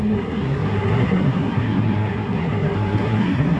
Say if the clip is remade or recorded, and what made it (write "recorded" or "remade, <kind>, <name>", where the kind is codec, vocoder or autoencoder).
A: remade, codec, SNAC